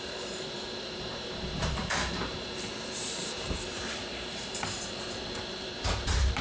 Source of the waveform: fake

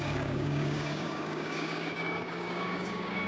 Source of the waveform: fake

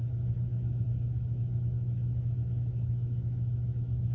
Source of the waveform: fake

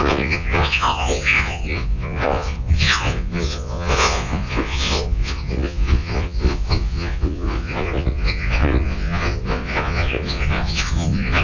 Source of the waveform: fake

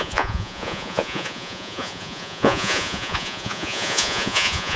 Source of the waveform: fake